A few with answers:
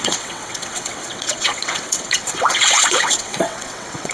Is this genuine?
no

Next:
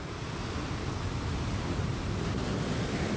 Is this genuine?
yes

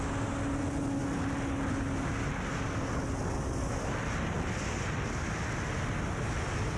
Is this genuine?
yes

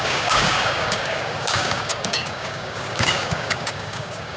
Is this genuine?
no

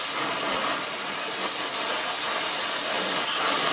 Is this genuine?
yes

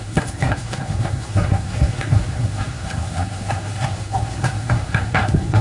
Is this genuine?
no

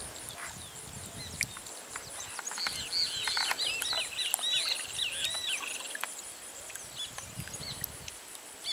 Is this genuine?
yes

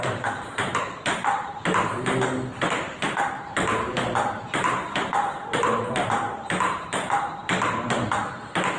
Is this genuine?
yes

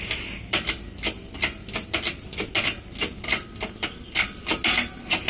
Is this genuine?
yes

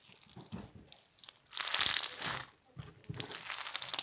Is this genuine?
yes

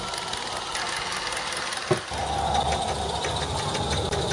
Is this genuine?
yes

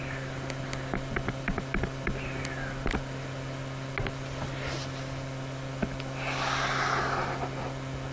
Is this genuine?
yes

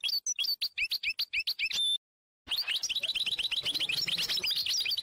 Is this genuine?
yes